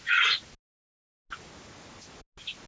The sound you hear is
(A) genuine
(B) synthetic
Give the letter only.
A